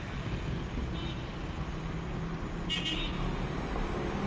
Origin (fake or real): real